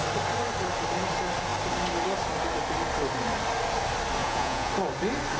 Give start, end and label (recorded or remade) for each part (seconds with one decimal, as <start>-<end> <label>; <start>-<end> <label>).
0.0-4.2 recorded; 4.2-4.7 remade; 4.7-5.4 recorded